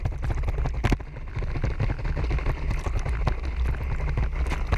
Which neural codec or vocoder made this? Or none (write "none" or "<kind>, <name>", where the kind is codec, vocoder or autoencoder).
none